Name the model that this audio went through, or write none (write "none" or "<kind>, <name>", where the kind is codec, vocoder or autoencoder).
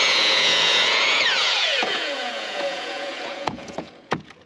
vocoder, Vocos